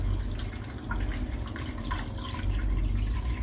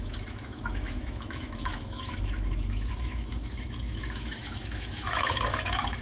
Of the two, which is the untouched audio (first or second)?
first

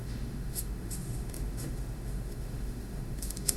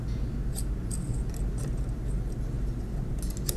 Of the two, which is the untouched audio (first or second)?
second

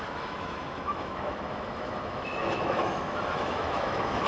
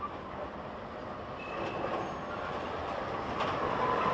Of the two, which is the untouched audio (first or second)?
second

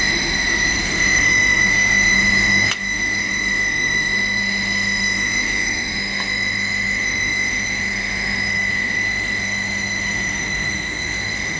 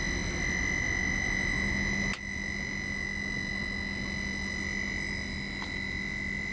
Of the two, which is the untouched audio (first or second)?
second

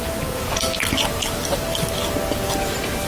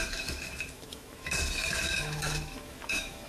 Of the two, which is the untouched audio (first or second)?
first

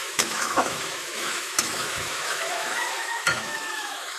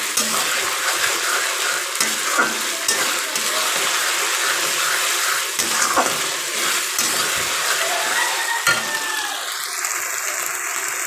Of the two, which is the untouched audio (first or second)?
second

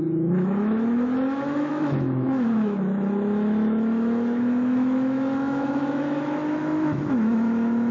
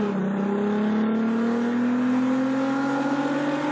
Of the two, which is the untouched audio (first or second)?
second